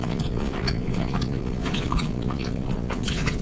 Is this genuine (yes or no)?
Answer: no